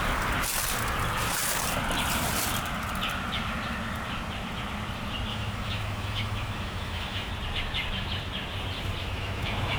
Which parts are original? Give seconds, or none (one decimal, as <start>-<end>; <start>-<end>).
0.0-5.3; 7.3-9.0